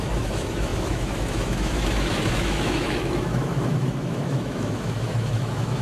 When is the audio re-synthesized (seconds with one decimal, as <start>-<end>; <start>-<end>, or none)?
0.0-5.8